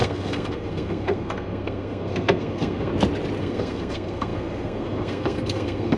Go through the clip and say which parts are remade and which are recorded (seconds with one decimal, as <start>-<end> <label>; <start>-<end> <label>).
0.0-2.9 remade; 2.9-3.4 recorded; 3.4-6.0 remade